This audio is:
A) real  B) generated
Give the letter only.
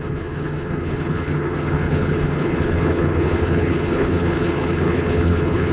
B